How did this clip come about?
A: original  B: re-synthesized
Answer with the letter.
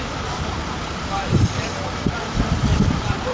B